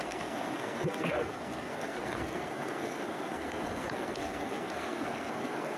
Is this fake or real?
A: fake